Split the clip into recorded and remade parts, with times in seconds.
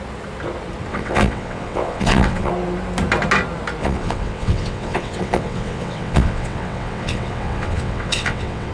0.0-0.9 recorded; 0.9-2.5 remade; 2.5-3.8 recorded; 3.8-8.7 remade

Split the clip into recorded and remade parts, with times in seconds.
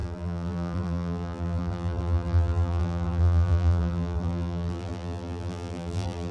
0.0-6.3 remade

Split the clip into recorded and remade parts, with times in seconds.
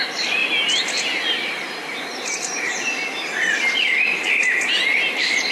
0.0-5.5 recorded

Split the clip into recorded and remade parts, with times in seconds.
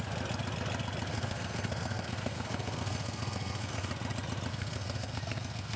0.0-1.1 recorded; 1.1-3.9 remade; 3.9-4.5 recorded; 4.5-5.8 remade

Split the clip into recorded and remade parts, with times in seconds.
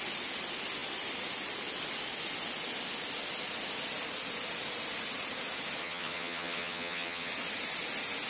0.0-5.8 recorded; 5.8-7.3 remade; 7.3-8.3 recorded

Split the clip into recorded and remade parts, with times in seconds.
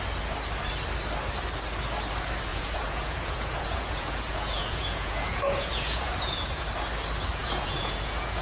0.0-2.5 recorded; 2.5-6.6 remade; 6.6-7.4 recorded; 7.4-8.4 remade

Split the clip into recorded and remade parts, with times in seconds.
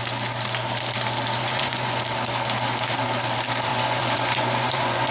0.0-1.4 recorded; 1.4-2.0 remade; 2.0-3.7 recorded; 3.7-5.1 remade